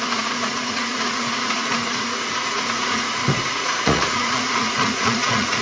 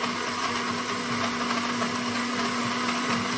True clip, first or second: second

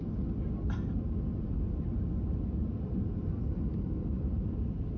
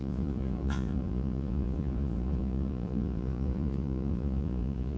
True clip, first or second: first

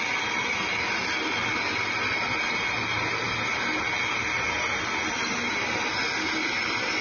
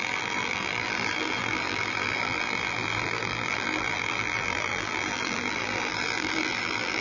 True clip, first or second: first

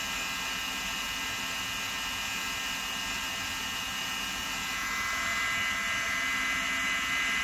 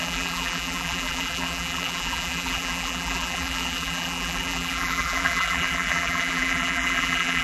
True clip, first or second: first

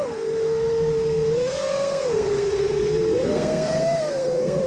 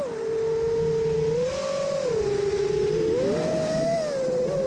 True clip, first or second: second